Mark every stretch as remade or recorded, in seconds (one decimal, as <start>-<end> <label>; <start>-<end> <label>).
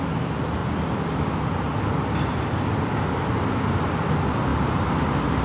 0.0-4.5 recorded; 4.5-5.4 remade